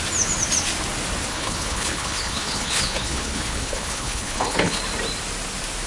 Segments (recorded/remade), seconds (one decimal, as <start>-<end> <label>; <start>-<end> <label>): 0.0-1.3 recorded; 1.3-4.8 remade; 4.8-5.9 recorded